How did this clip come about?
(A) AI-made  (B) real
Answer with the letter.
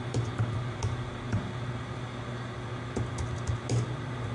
B